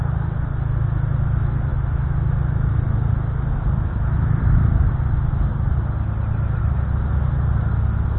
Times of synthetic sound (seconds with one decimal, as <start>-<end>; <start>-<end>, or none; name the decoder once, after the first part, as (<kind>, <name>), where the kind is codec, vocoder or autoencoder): none

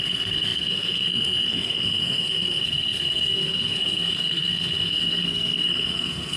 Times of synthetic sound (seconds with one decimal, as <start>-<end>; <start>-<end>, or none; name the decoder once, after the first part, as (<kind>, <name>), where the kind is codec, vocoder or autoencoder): 0.0-6.4 (codec, SNAC)

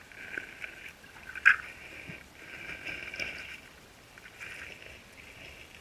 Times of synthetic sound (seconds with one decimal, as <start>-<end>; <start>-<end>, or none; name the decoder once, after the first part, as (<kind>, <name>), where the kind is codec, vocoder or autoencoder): none

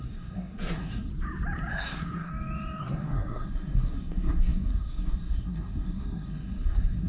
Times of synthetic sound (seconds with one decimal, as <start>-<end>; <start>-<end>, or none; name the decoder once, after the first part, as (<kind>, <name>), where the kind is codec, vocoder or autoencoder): 0.0-1.1 (codec, SNAC); 1.7-2.3; 2.8-7.1

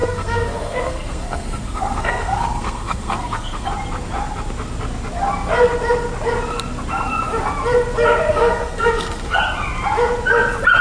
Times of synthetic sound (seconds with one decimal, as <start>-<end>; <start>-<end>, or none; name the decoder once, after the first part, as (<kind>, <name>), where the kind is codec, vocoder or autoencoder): 0.0-3.7 (codec, SNAC); 8.3-9.4